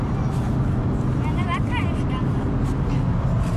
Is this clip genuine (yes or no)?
yes